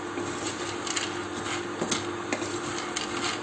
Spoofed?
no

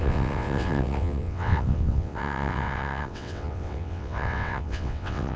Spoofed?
yes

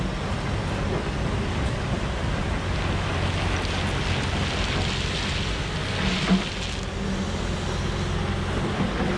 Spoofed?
no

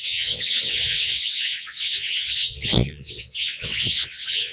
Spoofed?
yes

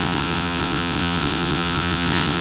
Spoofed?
yes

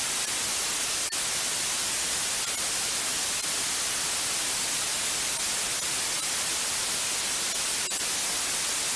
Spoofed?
no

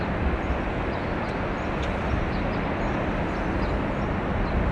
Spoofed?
no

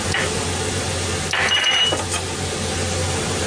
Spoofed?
no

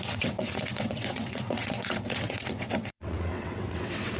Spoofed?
yes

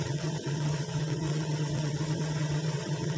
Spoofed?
yes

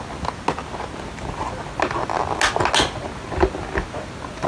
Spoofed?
no